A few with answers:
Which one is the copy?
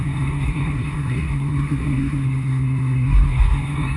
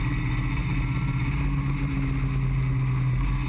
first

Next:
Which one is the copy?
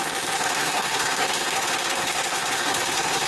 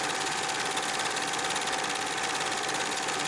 first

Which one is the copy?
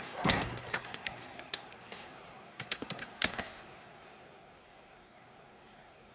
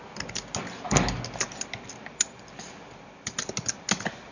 first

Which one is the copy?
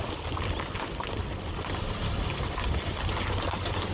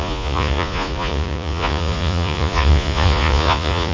second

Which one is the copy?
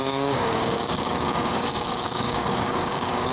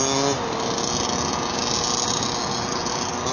first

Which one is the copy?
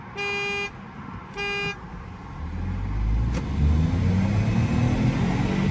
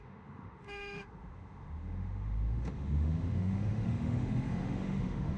second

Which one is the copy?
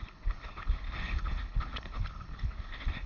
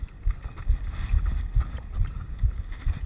first